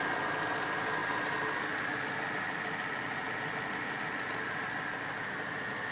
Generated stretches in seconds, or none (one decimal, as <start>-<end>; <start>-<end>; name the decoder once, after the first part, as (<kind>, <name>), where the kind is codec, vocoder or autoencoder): none